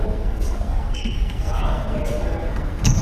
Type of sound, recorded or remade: remade